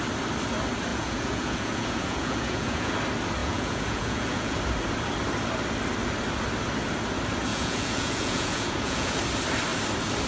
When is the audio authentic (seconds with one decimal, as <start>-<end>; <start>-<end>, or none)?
0.0-0.9; 2.9-3.4; 4.6-7.5; 9.2-10.3